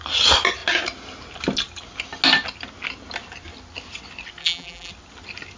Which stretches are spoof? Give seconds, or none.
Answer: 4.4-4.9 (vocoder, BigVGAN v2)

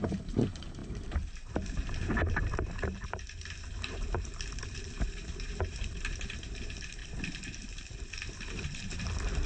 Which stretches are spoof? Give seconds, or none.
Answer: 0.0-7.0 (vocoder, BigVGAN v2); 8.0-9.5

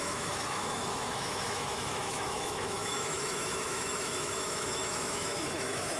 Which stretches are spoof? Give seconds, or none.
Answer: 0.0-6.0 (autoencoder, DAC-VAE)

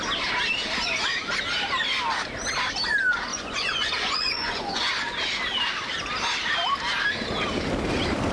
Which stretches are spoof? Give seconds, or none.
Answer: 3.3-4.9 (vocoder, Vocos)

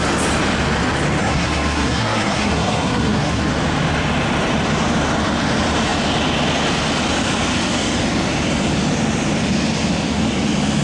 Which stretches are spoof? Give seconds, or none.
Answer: 1.2-3.5 (codec, SNAC)